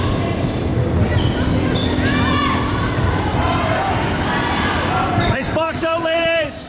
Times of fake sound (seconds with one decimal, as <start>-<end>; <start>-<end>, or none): 0.0-0.7; 4.5-6.7